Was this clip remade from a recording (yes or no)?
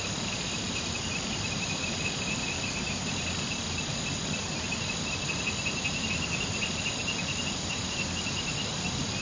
no